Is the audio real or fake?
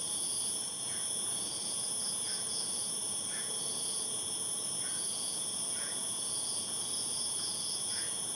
fake